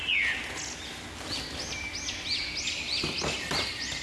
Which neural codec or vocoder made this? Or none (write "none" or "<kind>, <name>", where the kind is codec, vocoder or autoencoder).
none